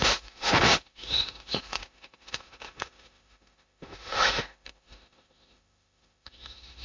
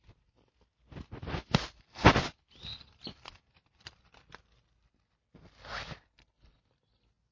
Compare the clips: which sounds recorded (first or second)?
second